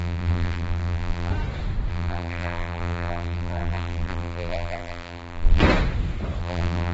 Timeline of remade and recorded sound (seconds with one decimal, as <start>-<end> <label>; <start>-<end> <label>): 0.0-1.3 remade; 1.3-1.9 recorded; 1.9-5.6 remade; 5.6-6.4 recorded; 6.4-6.9 remade